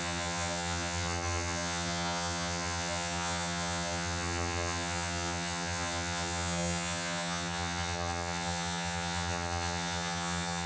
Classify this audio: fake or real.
fake